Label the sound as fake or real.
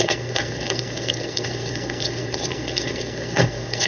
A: fake